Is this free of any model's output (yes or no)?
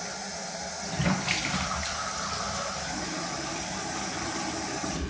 yes